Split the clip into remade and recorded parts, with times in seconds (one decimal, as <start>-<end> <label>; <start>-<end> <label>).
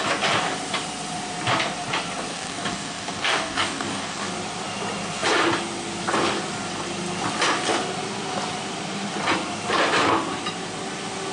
0.0-2.3 recorded; 2.3-4.3 remade; 4.3-11.3 recorded